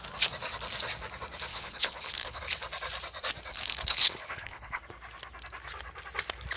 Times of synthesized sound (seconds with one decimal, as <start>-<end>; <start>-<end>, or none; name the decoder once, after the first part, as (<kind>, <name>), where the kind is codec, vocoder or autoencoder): 1.5-2.4 (codec, HILCodec); 3.5-4.8